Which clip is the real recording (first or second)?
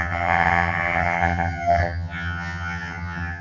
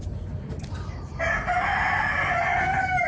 second